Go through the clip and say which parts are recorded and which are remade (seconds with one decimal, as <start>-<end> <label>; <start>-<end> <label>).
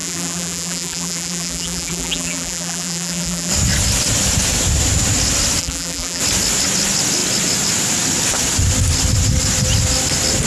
0.0-3.5 remade; 3.5-5.6 recorded; 5.6-6.2 remade; 6.2-10.5 recorded